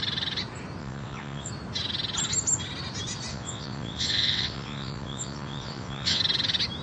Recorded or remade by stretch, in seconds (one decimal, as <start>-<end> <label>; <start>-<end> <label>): 0.0-0.8 recorded; 0.8-1.5 remade; 1.5-3.3 recorded; 3.3-6.2 remade; 6.2-6.8 recorded